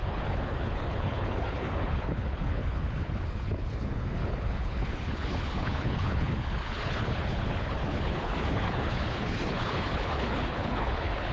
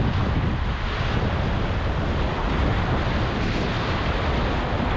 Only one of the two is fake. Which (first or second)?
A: first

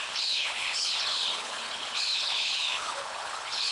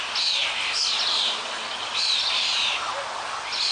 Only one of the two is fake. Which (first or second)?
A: first